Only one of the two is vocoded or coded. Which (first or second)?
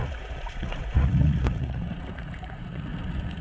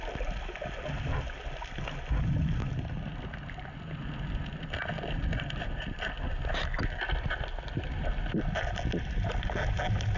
first